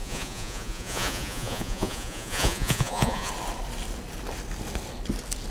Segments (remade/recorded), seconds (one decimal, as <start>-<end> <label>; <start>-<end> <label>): 0.0-3.3 remade; 3.3-5.5 recorded